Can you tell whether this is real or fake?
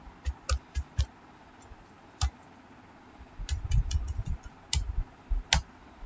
real